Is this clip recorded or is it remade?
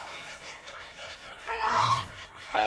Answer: remade